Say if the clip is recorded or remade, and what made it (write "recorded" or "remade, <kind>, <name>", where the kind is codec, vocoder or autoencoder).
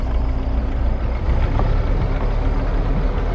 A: recorded